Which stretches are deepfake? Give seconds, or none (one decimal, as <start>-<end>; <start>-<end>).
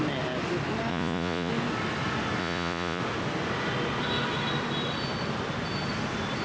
0.9-1.5; 2.4-3.0